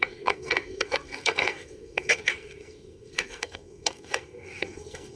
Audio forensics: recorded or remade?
remade